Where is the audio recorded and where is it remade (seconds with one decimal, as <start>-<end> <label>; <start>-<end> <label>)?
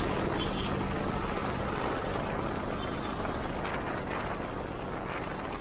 0.0-5.6 recorded